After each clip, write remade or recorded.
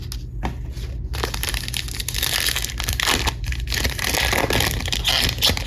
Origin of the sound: recorded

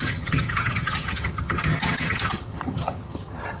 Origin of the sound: remade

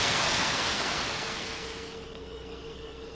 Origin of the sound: remade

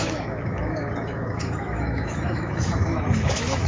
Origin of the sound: remade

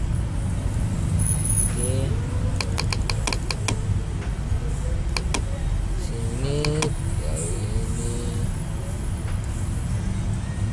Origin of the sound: recorded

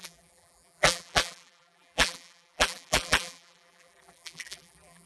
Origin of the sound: remade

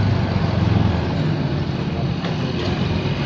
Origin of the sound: recorded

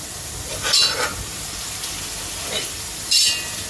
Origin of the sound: remade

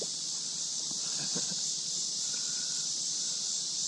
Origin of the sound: remade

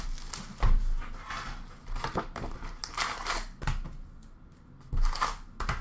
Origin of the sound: recorded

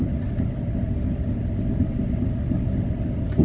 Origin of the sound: recorded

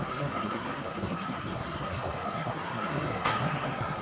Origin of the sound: remade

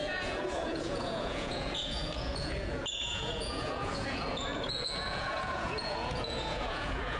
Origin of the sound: remade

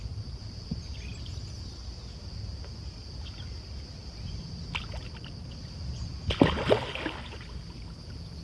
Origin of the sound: recorded